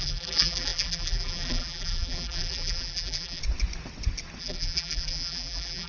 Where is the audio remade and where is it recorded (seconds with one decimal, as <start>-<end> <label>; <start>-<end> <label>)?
0.0-3.4 remade; 3.4-4.4 recorded; 4.4-5.9 remade